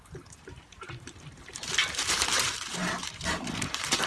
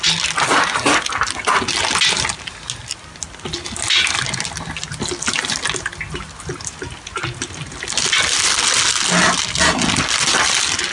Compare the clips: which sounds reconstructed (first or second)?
first